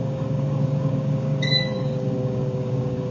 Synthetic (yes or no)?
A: yes